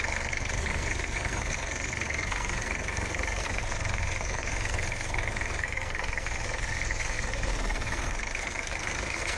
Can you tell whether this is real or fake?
fake